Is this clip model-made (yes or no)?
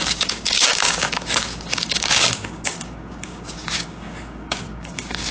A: yes